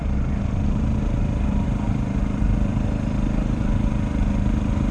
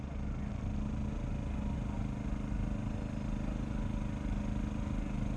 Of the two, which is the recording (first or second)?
second